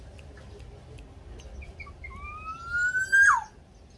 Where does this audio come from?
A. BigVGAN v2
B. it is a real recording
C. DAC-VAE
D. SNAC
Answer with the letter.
B